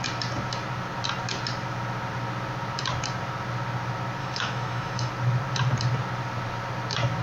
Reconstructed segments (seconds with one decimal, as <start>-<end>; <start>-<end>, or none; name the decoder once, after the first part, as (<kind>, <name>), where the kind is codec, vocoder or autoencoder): 4.2-5.1 (autoencoder, DAC-VAE)